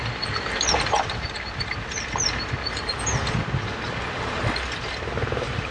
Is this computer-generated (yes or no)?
no